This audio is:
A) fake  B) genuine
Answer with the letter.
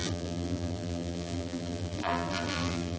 A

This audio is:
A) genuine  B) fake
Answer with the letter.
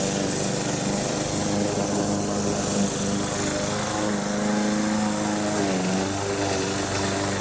A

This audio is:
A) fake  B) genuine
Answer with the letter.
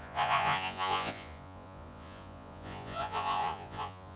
A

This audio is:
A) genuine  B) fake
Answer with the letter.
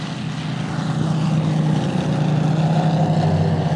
A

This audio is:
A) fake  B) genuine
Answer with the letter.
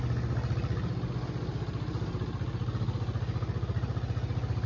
B